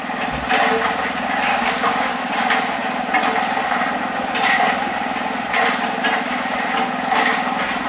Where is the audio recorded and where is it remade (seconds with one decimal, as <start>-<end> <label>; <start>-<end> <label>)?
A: 0.0-1.5 recorded; 1.5-2.3 remade; 2.3-7.9 recorded